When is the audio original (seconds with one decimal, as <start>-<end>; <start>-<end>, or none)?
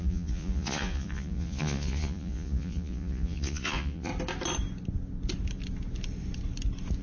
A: 4.1-7.0